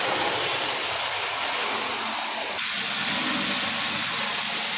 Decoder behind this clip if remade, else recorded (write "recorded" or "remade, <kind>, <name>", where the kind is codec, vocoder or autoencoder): recorded